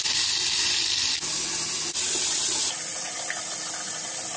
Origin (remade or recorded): recorded